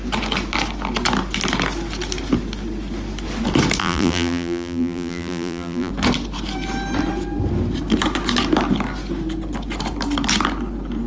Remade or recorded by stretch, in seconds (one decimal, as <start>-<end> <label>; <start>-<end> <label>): 0.0-3.8 recorded; 3.8-5.9 remade; 5.9-11.1 recorded